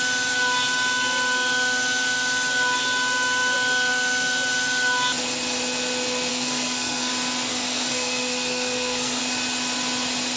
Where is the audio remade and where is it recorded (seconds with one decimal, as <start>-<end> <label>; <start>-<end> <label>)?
0.0-6.3 recorded; 6.3-7.1 remade; 7.1-7.5 recorded; 7.5-9.2 remade; 9.2-10.4 recorded